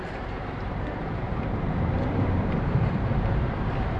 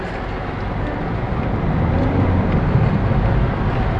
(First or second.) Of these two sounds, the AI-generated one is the first